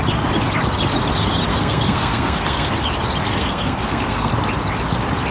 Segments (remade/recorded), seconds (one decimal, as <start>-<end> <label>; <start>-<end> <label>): 0.0-1.5 recorded; 1.5-2.7 remade; 2.7-3.3 recorded; 3.3-4.3 remade; 4.3-5.3 recorded